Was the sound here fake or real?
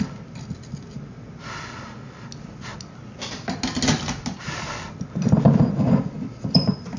real